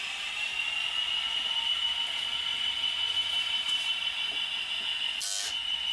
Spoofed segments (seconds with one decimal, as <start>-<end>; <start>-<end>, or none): 0.0-0.5; 3.1-3.9